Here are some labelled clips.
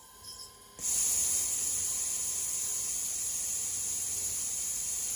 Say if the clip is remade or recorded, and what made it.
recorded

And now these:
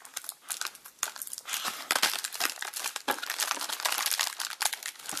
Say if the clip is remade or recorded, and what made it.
recorded